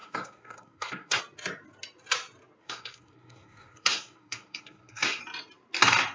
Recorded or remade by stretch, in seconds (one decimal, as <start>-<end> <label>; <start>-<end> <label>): 0.0-1.2 remade; 1.2-2.6 recorded; 2.6-5.2 remade; 5.2-6.1 recorded